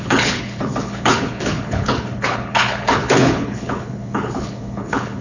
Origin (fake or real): fake